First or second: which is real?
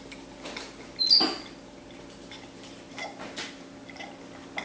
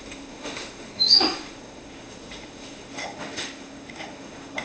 first